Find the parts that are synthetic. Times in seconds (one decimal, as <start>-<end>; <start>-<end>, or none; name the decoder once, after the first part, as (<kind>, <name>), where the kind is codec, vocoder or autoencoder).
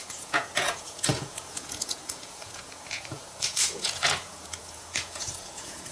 0.0-5.9 (vocoder, Vocos)